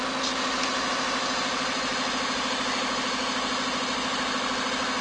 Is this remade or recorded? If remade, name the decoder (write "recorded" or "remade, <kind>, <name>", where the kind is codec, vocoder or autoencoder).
recorded